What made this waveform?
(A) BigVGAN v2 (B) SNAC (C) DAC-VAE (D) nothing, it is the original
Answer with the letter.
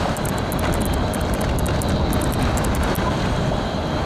D